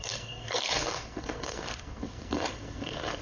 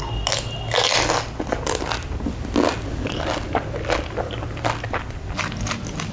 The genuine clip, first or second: second